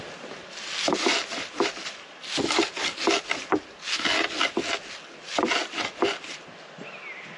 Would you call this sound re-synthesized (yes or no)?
no